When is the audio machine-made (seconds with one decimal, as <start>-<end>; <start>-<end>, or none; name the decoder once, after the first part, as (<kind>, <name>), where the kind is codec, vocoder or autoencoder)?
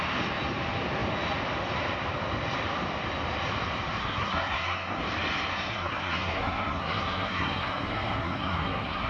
4.0-5.0 (codec, SNAC); 5.5-9.1